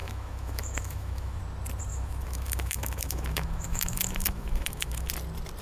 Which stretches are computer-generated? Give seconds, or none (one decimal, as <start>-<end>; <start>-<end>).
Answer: 0.0-1.4; 1.9-5.1